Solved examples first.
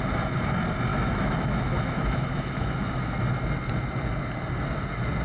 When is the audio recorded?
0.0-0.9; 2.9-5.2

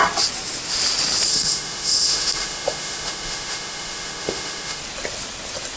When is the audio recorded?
0.0-1.3; 4.8-5.8

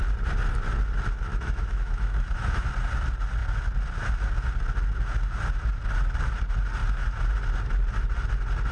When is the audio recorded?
0.0-1.3; 2.7-8.7

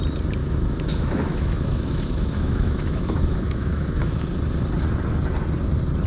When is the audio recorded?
0.0-0.4; 4.1-6.1

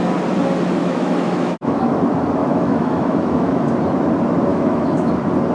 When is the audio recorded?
0.0-0.8; 2.0-2.4; 3.7-4.5; 5.1-5.5

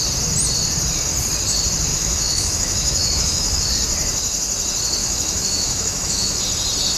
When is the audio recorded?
0.0-1.9; 3.7-5.0; 6.4-7.0

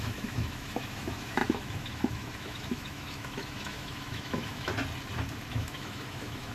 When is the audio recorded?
4.7-5.5